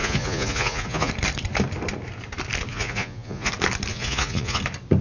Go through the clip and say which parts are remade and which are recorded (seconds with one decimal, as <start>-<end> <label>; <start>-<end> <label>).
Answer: 0.0-1.1 remade; 1.1-2.7 recorded; 2.7-3.5 remade; 3.5-3.9 recorded; 3.9-4.6 remade; 4.6-5.0 recorded